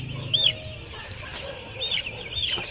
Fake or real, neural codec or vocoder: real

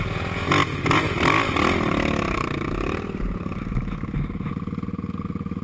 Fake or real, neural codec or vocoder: real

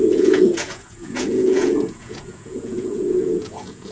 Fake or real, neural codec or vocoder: fake, vocoder, Vocos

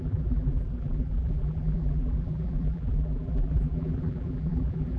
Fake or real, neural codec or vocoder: fake, vocoder, BigVGAN v2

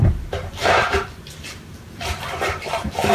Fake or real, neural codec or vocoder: fake, vocoder, BigVGAN v2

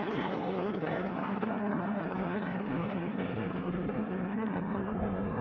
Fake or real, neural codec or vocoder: fake, codec, SNAC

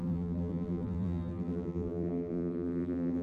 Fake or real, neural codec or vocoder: fake, vocoder, BigVGAN v2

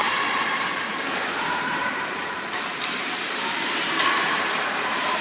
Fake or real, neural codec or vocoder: fake, vocoder, BigVGAN v2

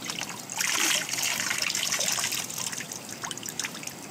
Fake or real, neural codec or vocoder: fake, vocoder, BigVGAN v2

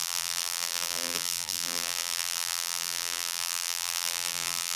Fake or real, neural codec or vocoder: fake, vocoder, BigVGAN v2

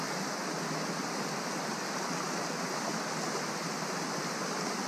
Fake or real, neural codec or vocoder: real